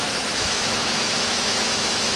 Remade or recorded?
remade